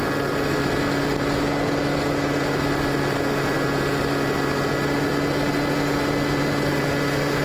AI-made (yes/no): no